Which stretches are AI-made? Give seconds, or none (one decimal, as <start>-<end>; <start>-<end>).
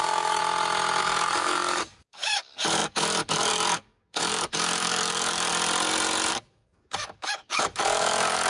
0.0-0.4; 1.0-5.5; 6.3-8.5